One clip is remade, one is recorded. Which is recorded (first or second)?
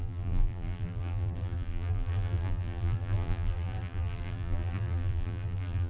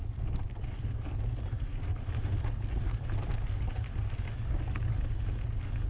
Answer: second